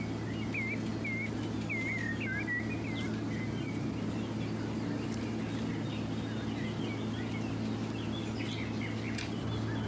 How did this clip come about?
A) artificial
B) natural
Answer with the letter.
B